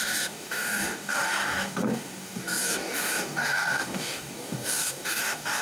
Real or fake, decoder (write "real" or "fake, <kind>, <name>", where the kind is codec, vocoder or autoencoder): fake, codec, DAC